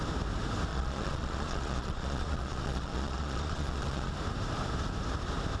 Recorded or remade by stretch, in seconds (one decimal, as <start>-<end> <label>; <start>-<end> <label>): 0.0-0.7 recorded; 0.7-4.1 remade; 4.1-5.6 recorded